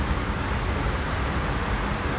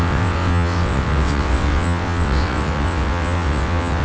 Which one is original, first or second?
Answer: first